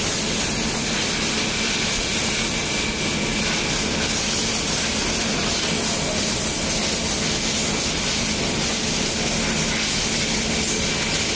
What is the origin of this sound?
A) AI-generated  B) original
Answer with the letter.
B